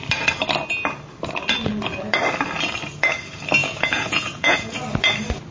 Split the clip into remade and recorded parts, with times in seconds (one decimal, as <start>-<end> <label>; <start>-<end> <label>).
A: 0.0-3.6 recorded; 3.6-4.8 remade; 4.8-5.5 recorded